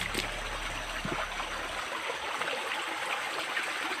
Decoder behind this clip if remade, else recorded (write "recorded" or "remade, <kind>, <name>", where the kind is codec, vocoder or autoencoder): recorded